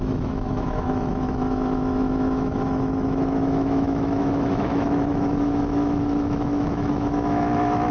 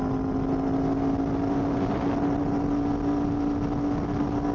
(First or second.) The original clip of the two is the second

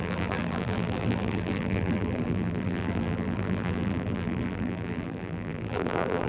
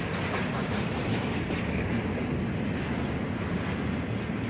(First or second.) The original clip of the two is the second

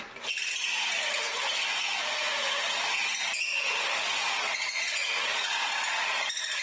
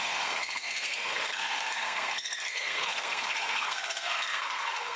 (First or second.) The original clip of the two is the first